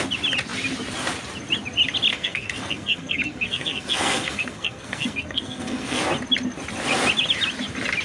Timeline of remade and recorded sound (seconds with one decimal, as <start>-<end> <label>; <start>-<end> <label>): 0.0-2.1 recorded; 2.1-6.0 remade; 6.0-8.0 recorded